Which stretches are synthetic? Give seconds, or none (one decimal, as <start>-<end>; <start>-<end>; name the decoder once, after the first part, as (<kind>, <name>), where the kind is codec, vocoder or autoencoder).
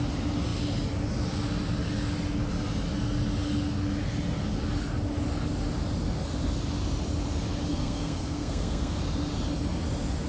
7.7-9.0 (codec, SNAC)